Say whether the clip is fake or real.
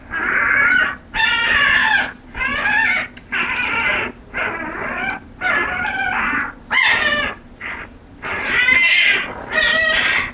real